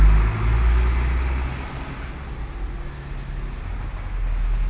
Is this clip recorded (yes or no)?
yes